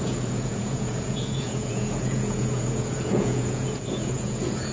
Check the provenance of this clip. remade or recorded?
remade